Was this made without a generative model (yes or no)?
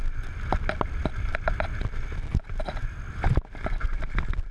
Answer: yes